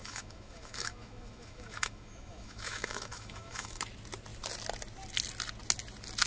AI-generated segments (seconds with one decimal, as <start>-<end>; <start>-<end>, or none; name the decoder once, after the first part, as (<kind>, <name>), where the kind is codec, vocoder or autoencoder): 0.0-3.8 (autoencoder, DAC-VAE)